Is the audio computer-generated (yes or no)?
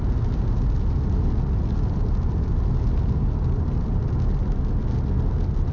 no